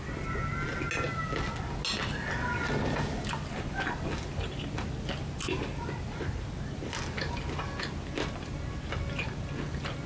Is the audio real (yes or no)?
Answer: yes